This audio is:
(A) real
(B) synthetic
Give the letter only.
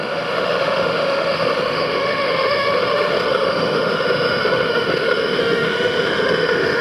B